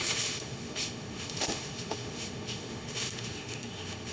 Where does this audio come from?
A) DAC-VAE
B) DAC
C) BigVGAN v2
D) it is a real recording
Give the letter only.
A